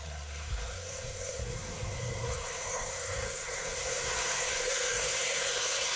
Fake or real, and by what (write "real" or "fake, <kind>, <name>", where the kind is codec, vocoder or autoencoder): fake, codec, SNAC